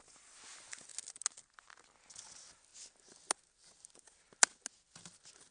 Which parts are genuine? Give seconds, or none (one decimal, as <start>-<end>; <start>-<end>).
0.0-5.5